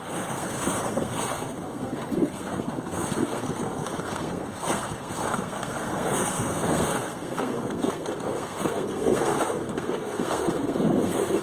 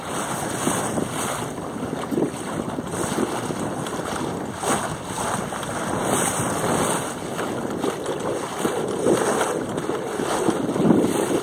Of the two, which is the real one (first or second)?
second